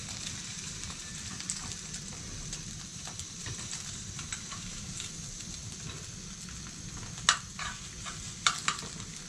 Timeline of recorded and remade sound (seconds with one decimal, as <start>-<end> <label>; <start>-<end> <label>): 0.0-1.2 remade; 1.2-2.9 recorded; 2.9-4.8 remade; 4.8-9.3 recorded

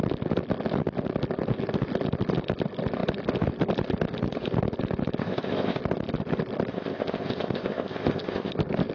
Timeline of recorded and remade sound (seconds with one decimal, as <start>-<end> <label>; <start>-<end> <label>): 0.0-5.2 recorded; 5.2-5.8 remade; 5.8-6.7 recorded; 6.7-8.5 remade; 8.5-8.9 recorded

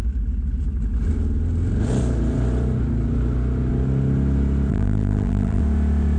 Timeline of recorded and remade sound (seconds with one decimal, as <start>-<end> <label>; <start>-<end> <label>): 0.0-4.7 recorded; 4.7-5.6 remade; 5.6-6.2 recorded

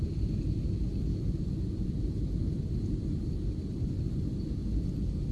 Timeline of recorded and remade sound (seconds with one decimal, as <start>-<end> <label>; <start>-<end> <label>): 0.0-5.3 recorded

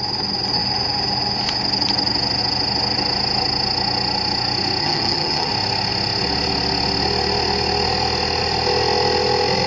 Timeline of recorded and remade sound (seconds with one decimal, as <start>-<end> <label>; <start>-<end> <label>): 0.0-4.8 recorded; 4.8-5.5 remade; 5.5-9.7 recorded

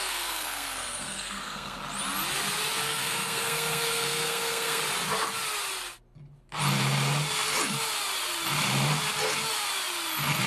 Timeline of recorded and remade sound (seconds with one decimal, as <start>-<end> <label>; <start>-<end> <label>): 0.0-1.8 remade; 1.8-2.9 recorded; 2.9-4.8 remade; 4.8-10.5 recorded

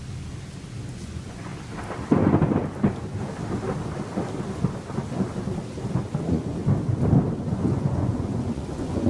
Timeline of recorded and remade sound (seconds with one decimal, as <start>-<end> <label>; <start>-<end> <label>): 0.0-0.9 recorded; 0.9-1.5 remade; 1.5-5.9 recorded; 5.9-6.6 remade; 6.6-7.5 recorded; 7.5-9.1 remade

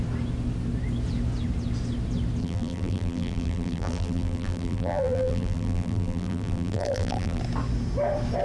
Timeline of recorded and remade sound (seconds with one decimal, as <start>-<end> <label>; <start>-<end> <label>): 0.0-2.4 recorded; 2.4-7.4 remade; 7.4-8.4 recorded